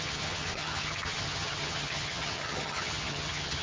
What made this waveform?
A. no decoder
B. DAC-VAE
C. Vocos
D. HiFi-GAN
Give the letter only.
D